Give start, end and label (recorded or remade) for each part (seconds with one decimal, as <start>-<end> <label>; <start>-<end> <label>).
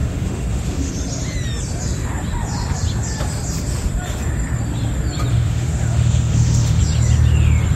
0.0-0.9 remade; 0.9-5.3 recorded; 5.3-6.8 remade; 6.8-7.8 recorded